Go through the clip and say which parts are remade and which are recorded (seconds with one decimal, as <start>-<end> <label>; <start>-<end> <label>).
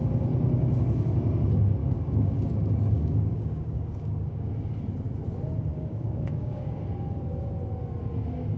0.0-1.8 recorded; 1.8-4.5 remade; 4.5-5.7 recorded; 5.7-6.8 remade; 6.8-8.6 recorded